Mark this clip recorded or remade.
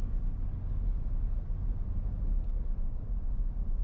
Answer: recorded